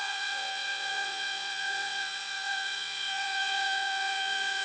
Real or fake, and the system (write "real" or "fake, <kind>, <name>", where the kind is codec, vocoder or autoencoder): fake, vocoder, WaveNeXt